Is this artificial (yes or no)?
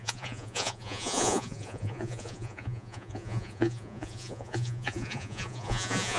yes